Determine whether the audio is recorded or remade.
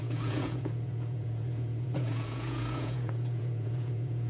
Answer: remade